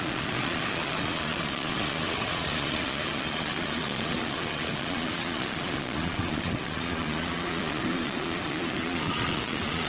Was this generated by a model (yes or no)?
yes